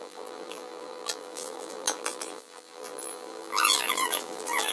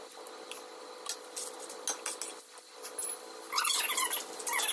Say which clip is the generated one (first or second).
first